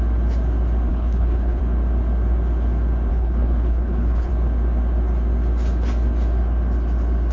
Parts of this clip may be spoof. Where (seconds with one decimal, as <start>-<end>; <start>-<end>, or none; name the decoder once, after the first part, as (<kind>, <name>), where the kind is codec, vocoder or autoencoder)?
0.9-1.6 (codec, HILCodec); 3.1-4.3